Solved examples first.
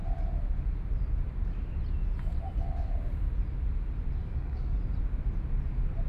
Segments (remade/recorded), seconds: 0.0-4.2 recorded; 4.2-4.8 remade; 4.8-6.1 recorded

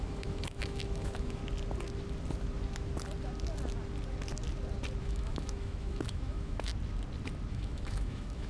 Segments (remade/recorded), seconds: 0.0-1.4 remade; 1.4-5.0 recorded; 5.0-6.7 remade; 6.7-7.5 recorded; 7.5-8.5 remade

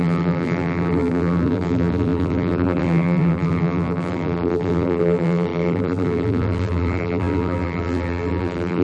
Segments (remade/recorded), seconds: 0.0-8.8 remade

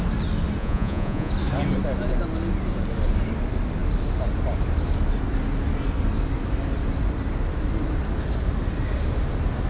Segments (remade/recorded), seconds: 0.0-0.6 recorded; 0.6-1.3 remade; 1.3-9.7 recorded

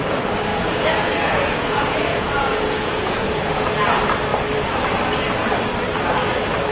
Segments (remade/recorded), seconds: 0.0-0.5 recorded; 0.5-3.7 remade; 3.7-6.7 recorded

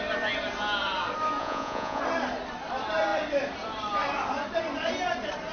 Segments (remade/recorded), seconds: 0.0-1.4 recorded; 1.4-2.0 remade; 2.0-5.5 recorded